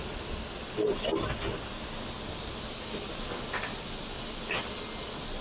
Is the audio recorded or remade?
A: recorded